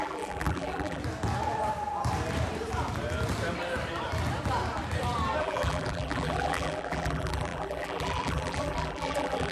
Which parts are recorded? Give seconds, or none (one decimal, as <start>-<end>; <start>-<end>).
1.0-5.4